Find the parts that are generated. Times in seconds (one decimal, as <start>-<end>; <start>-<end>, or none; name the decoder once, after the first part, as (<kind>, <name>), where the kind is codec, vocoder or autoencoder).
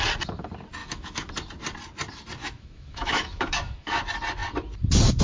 0.8-1.3 (autoencoder, DAC-VAE); 2.4-3.9